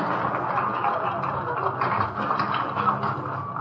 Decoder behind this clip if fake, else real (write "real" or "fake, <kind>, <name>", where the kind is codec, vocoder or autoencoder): real